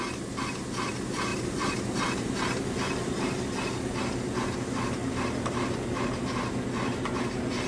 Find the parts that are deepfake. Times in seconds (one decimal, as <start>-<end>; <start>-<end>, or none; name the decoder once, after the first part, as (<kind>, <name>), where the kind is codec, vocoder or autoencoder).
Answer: 1.3-3.4 (vocoder, BigVGAN v2); 5.0-5.5